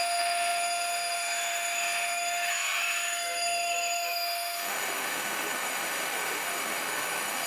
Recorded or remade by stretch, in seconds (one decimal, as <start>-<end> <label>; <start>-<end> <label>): 0.0-7.5 remade